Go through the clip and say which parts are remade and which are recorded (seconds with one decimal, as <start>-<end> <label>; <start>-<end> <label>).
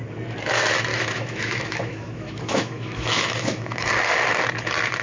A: 0.0-0.9 recorded; 0.9-3.9 remade; 3.9-5.0 recorded